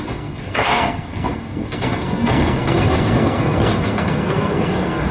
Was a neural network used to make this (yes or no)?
yes